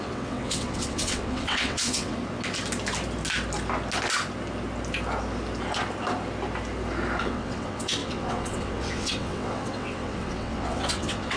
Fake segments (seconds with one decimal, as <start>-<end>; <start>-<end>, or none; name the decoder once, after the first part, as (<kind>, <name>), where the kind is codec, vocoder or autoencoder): 0.0-2.2 (vocoder, WaveNeXt); 7.2-11.4